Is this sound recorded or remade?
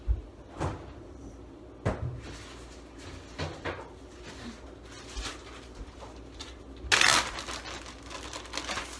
recorded